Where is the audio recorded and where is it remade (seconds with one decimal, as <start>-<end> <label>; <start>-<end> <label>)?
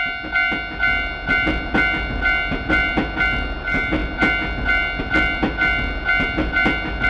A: 0.0-7.1 recorded